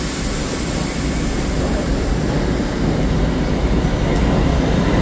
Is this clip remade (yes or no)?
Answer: no